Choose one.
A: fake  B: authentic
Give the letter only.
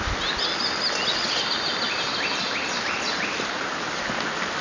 B